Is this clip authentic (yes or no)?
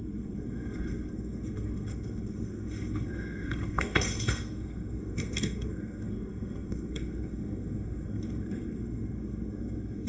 no